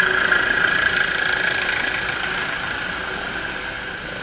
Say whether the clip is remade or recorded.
recorded